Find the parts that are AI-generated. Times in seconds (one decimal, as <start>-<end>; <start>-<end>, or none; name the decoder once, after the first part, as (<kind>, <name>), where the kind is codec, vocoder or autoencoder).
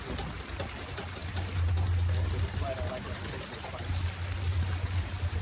none